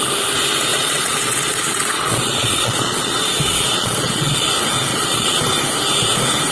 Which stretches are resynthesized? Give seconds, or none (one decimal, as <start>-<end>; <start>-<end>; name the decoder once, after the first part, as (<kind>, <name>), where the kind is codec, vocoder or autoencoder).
0.7-4.5 (vocoder, Vocos); 4.9-5.4